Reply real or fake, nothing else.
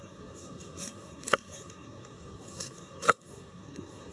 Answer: fake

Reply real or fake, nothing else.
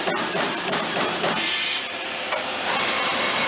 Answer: fake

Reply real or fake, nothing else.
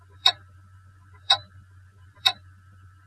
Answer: fake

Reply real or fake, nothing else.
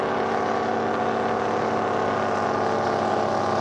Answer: real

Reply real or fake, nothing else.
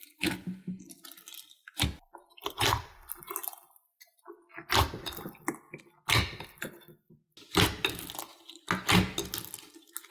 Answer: real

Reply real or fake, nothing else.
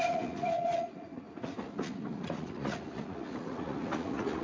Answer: fake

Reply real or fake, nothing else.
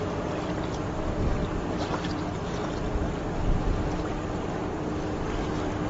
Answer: real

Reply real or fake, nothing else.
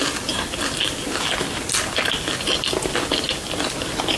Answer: real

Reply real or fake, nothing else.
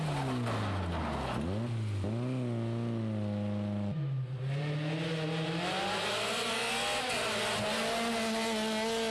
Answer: real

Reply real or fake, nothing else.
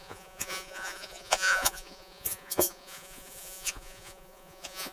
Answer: fake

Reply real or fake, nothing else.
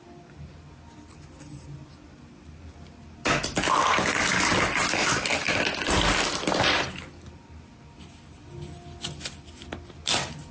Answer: real